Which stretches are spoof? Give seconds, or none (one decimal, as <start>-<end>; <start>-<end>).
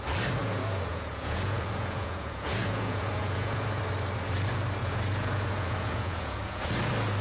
0.4-3.8; 4.8-6.7